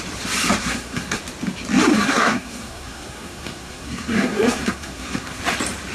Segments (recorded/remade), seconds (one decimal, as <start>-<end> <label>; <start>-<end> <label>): 0.0-0.6 recorded; 0.6-1.2 remade; 1.2-1.9 recorded; 1.9-5.4 remade; 5.4-5.9 recorded